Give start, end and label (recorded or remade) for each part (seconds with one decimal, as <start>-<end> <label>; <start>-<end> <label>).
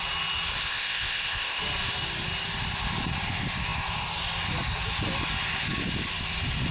0.0-0.6 recorded; 0.6-1.6 remade; 1.6-6.7 recorded